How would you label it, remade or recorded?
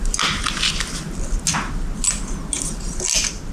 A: recorded